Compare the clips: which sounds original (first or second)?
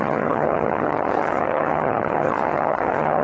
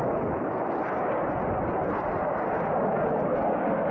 second